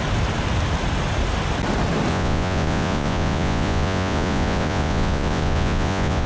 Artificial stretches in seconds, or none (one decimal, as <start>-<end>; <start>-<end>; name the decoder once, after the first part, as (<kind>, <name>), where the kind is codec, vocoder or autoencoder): 2.1-6.3 (vocoder, Vocos)